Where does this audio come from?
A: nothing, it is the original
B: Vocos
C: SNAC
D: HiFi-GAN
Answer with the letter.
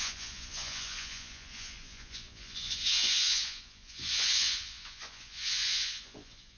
B